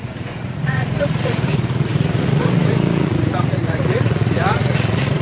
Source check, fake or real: fake